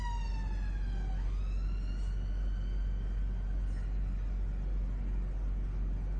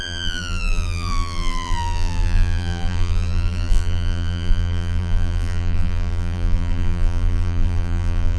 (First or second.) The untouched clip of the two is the first